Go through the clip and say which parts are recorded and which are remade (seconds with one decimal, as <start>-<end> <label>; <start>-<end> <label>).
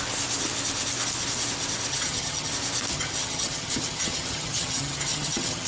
0.0-1.9 recorded; 1.9-2.5 remade; 2.5-2.9 recorded; 2.9-5.7 remade